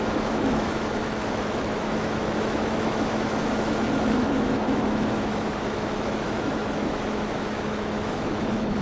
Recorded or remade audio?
remade